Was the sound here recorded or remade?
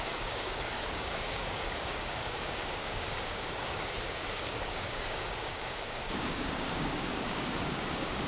remade